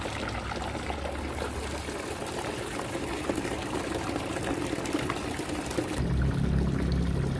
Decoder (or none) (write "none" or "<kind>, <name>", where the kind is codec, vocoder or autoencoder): none